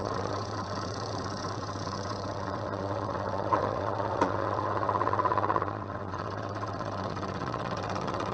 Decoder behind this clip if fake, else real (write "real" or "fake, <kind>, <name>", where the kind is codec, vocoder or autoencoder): fake, vocoder, WaveNeXt